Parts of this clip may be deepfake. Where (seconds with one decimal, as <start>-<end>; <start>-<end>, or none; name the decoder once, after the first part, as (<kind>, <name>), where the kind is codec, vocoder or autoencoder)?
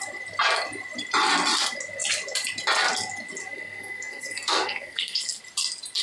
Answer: 3.4-5.4 (codec, SNAC)